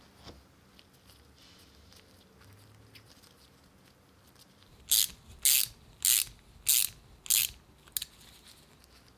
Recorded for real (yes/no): yes